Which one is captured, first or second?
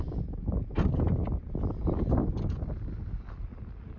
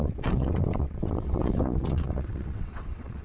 first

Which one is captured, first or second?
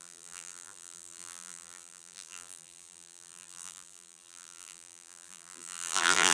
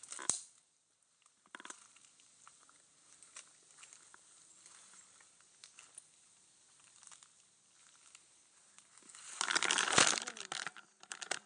second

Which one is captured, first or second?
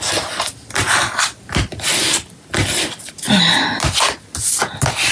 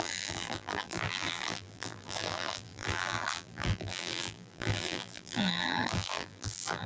first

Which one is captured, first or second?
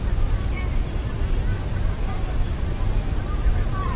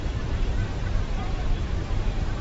first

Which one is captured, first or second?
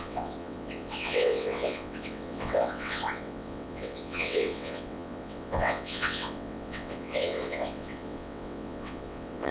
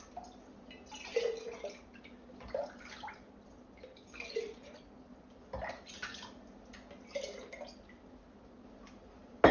second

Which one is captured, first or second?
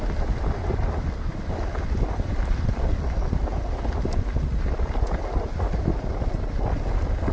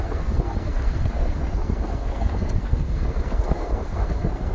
first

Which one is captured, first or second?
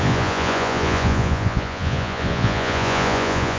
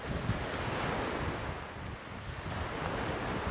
second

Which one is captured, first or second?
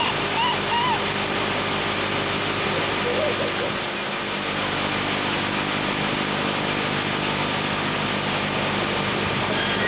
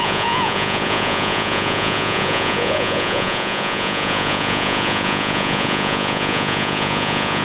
first